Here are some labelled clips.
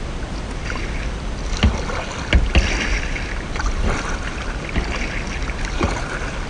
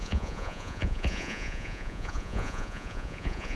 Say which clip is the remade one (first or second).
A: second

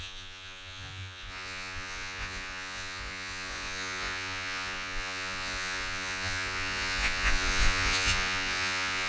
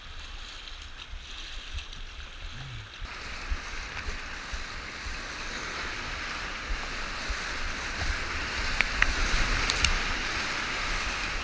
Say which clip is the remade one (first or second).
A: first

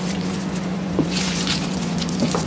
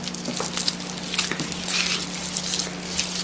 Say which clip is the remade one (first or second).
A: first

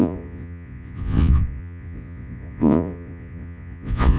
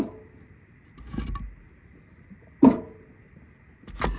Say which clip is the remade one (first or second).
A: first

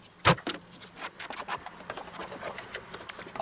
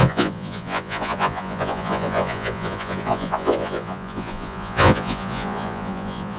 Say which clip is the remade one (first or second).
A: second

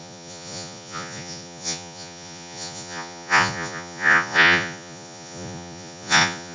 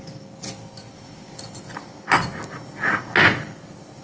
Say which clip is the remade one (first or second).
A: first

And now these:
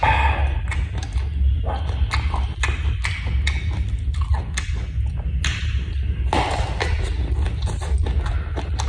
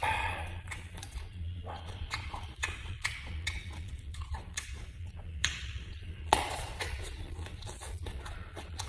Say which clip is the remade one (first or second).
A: second